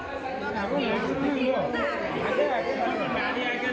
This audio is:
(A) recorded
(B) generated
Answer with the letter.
A